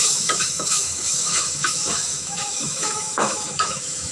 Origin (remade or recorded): remade